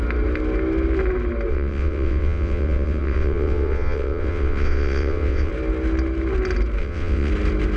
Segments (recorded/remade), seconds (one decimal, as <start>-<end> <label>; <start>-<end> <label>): 0.0-1.5 recorded; 1.5-5.5 remade; 5.5-6.8 recorded; 6.8-7.3 remade; 7.3-7.8 recorded